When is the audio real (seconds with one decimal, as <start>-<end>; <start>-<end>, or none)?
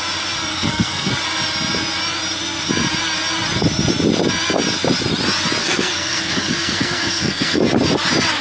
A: 0.0-0.5; 1.1-5.6; 7.6-8.4